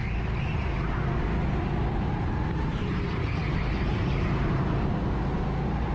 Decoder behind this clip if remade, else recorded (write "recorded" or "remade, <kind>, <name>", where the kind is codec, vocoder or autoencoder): recorded